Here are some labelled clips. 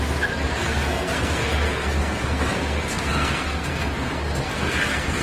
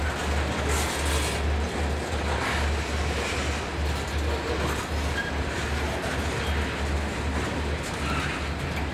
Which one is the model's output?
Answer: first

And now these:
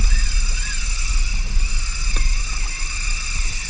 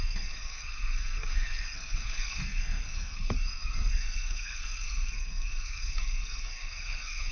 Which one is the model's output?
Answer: second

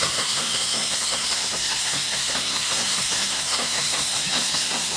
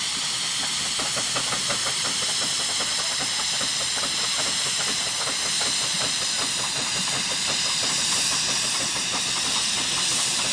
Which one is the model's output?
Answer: first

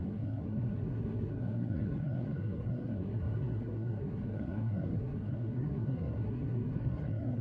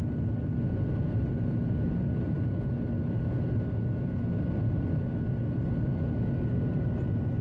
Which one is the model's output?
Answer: first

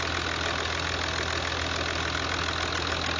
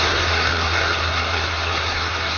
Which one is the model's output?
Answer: second